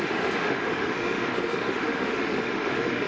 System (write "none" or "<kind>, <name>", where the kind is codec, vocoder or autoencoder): autoencoder, DAC-VAE